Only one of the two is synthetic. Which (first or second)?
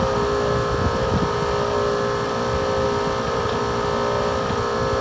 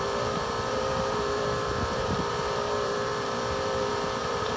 second